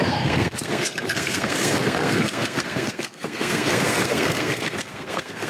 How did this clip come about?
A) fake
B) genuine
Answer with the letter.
A